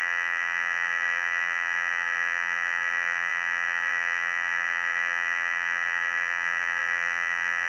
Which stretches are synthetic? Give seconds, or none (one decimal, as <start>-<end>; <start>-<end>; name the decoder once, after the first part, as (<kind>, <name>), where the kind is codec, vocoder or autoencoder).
0.0-7.7 (vocoder, BigVGAN v2)